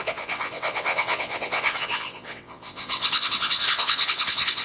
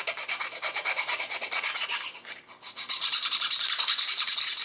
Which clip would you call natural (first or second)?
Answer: second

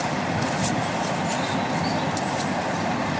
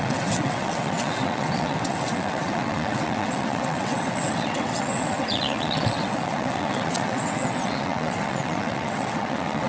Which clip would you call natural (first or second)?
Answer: first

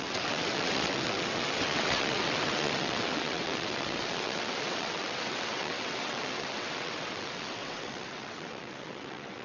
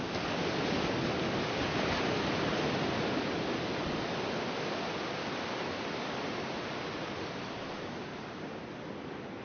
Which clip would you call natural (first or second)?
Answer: second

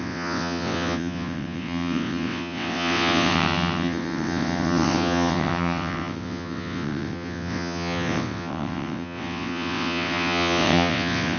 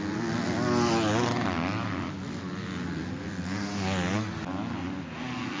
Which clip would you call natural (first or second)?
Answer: second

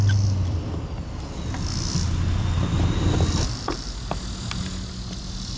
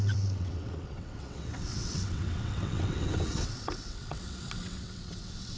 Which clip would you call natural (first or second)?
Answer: first